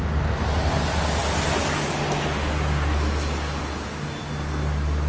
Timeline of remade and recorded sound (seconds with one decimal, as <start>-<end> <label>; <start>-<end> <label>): 0.0-5.1 recorded

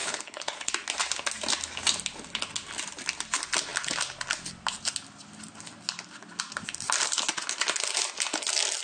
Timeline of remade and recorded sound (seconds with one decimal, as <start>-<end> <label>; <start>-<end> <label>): 0.0-0.7 remade; 0.7-8.8 recorded

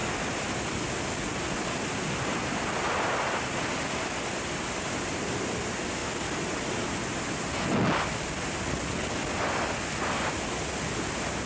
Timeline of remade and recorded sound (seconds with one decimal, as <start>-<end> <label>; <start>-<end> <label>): 0.0-11.5 recorded